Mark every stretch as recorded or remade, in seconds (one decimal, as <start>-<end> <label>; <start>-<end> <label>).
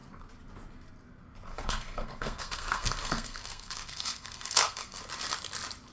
0.0-1.5 recorded; 1.5-5.0 remade; 5.0-5.9 recorded